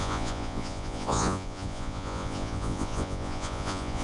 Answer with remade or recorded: remade